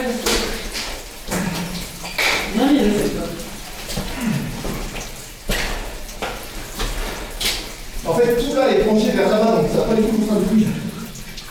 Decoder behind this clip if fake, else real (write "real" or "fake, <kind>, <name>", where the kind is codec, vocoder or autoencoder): fake, vocoder, BigVGAN v2